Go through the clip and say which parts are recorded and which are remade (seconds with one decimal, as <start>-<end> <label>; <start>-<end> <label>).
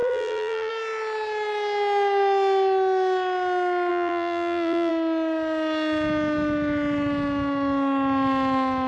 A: 0.0-0.7 remade; 0.7-3.9 recorded; 3.9-4.9 remade; 4.9-8.9 recorded